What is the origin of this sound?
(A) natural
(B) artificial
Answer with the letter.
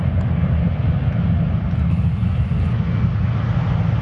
A